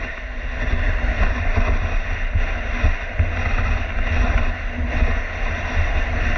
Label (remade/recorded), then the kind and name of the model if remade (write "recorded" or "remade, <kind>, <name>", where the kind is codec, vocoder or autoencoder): recorded